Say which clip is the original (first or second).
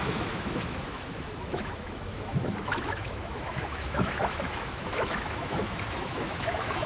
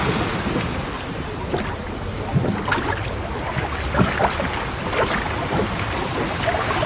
second